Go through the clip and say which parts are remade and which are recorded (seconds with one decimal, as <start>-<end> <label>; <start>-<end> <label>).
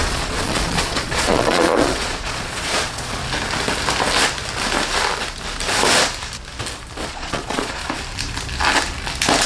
0.0-3.2 remade; 3.2-7.1 recorded; 7.1-7.8 remade; 7.8-9.5 recorded